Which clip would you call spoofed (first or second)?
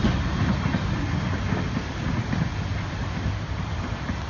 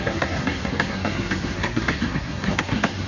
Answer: second